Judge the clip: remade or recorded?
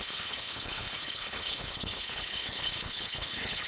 remade